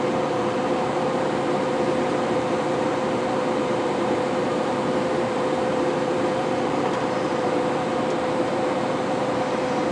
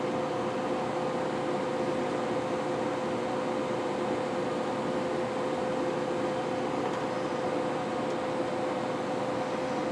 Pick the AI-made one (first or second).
first